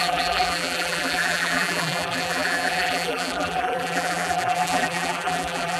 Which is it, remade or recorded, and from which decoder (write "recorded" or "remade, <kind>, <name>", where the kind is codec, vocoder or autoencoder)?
remade, vocoder, BigVGAN v2